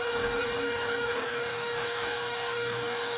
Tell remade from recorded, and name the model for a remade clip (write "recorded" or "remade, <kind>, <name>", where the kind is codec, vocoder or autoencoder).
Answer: remade, codec, DAC